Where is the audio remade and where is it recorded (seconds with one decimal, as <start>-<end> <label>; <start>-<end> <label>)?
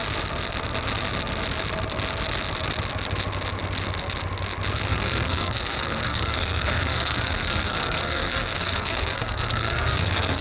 0.0-4.9 recorded; 4.9-10.4 remade